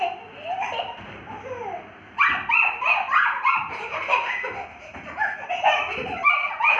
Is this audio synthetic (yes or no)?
no